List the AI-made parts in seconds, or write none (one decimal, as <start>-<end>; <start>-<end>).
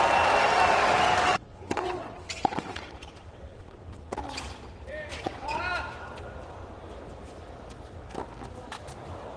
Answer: 1.3-4.2; 5.1-5.6